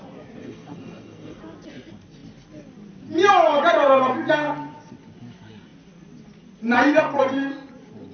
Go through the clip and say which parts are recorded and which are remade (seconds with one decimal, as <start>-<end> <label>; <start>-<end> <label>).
0.0-0.4 recorded; 0.4-1.4 remade; 1.4-8.1 recorded